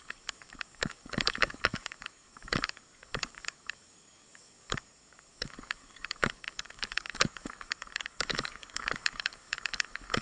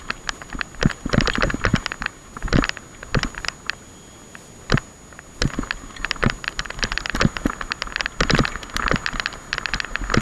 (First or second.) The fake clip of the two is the first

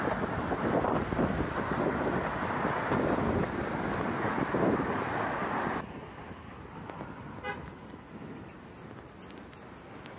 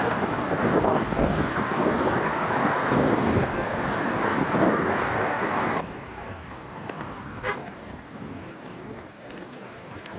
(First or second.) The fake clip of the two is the second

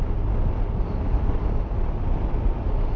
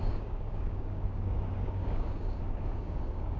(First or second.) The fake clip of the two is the second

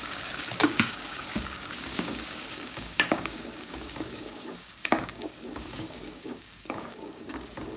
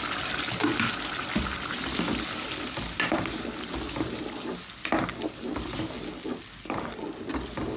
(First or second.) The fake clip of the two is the first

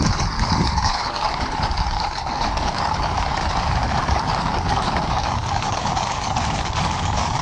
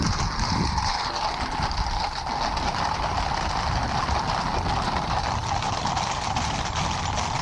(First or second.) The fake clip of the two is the first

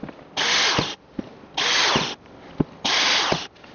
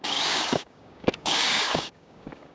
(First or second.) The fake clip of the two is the second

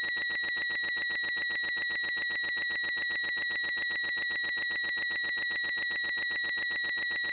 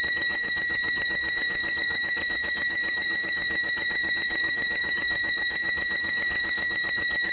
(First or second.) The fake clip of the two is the second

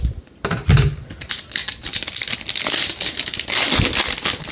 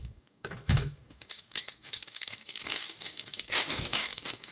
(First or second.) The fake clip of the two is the second